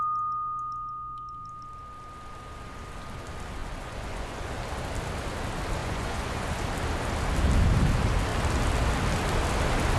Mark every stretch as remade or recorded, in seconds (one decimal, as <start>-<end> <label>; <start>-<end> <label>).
0.0-3.6 recorded; 3.6-4.5 remade; 4.5-5.8 recorded; 5.8-6.6 remade; 6.6-10.0 recorded